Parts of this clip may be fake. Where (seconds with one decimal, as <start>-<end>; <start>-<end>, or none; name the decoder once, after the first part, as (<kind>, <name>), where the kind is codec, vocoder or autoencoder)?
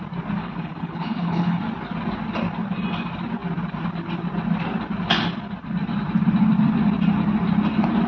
0.4-1.6 (codec, HILCodec)